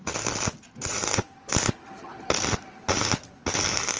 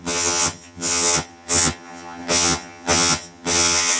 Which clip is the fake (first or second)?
second